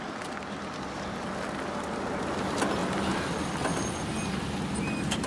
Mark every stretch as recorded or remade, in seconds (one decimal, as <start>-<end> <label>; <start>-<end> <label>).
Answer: 0.0-5.3 recorded